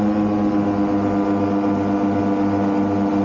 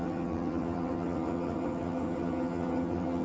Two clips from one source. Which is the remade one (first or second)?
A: second